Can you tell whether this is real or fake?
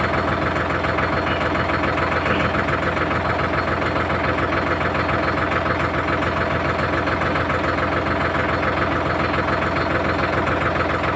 real